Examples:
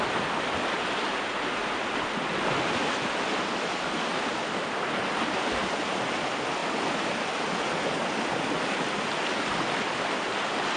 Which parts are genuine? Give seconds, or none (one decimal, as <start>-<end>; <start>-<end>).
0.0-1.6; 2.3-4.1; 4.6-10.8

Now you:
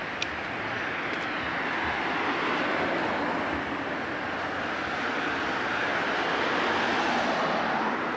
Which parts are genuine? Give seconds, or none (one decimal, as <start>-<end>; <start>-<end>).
0.0-8.2

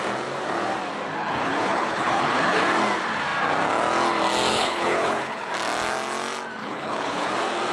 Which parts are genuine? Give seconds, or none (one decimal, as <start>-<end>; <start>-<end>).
0.0-1.2; 2.6-4.5; 5.5-6.6; 7.3-7.7